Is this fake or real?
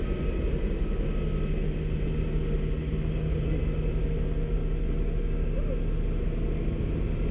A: real